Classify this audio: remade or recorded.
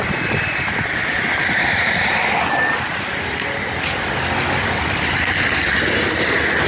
recorded